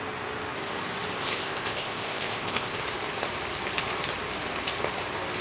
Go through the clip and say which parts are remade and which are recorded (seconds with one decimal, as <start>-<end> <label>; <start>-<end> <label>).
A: 0.0-1.2 recorded; 1.2-2.8 remade; 2.8-5.4 recorded